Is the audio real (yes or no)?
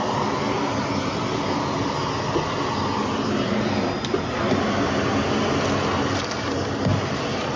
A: yes